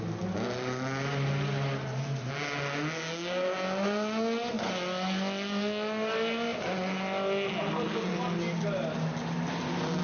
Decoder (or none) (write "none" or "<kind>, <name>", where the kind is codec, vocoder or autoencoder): none